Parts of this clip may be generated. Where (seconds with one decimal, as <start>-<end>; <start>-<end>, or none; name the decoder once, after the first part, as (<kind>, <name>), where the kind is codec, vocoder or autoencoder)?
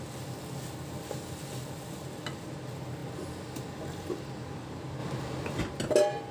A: none